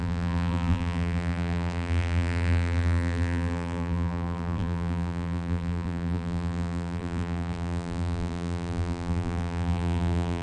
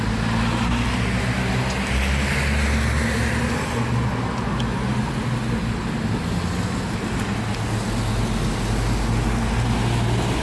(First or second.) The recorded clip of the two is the second